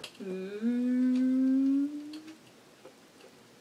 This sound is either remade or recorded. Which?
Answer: recorded